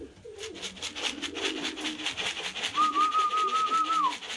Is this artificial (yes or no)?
no